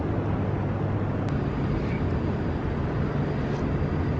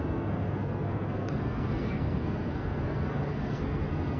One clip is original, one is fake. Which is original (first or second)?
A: first